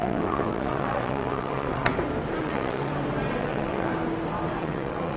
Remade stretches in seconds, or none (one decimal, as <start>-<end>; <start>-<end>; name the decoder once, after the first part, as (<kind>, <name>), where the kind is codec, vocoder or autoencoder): 0.0-1.9 (vocoder, WaveNeXt); 2.4-2.9; 3.4-3.9; 4.6-5.2